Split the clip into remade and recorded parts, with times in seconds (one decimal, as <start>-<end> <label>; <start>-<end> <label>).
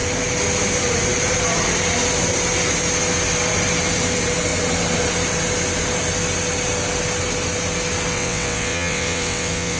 0.0-8.1 recorded; 8.1-9.8 remade